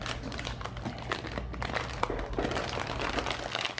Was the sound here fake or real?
real